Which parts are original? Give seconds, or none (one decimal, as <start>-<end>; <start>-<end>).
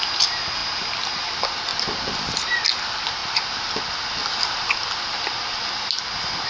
0.0-1.7; 2.5-4.2; 4.7-6.5